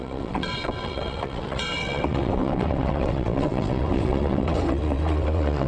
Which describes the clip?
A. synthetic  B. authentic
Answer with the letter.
A